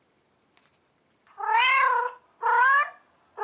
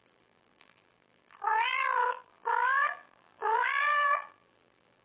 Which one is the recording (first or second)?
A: first